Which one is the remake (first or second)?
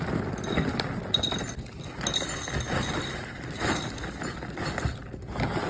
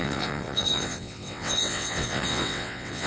second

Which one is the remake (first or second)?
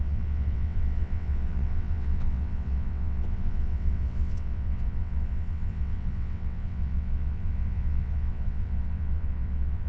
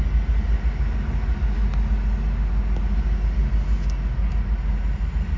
first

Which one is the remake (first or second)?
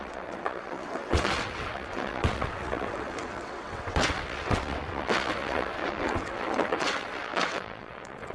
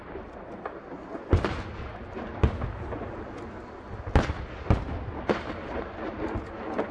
first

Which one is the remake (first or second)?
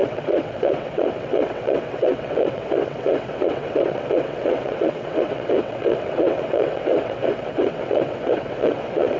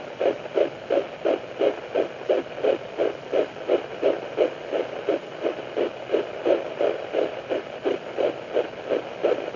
first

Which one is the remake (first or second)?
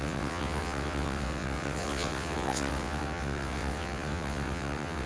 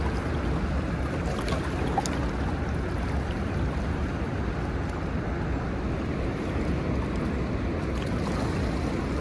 first